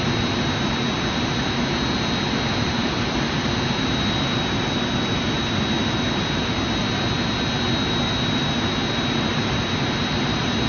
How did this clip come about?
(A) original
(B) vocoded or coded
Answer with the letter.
A